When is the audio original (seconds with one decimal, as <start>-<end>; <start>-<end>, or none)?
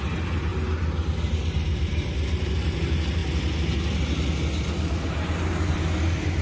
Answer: 0.5-1.5; 3.2-5.1